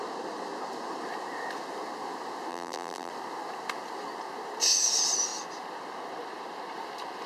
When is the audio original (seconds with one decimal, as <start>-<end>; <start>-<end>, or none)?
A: 0.0-2.5; 3.1-7.3